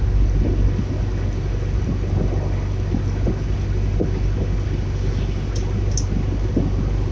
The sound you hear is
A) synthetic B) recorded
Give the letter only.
B